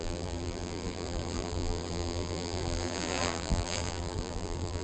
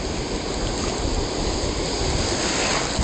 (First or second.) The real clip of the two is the second